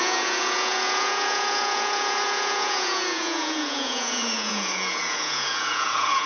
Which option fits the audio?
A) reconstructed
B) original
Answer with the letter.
A